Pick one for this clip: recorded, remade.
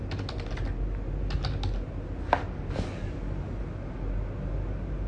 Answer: recorded